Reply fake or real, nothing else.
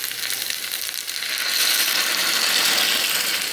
real